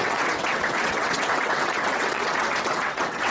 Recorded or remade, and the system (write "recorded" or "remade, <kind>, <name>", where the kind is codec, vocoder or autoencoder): remade, vocoder, WaveNeXt